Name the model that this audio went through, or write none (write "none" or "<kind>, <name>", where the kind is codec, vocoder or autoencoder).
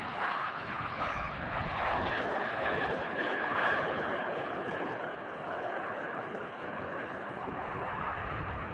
codec, HILCodec